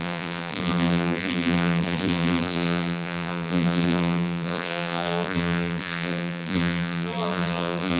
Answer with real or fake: fake